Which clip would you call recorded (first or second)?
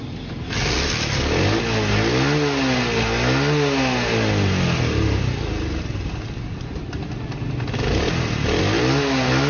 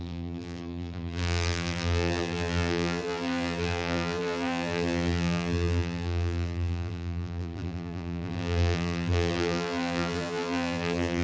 first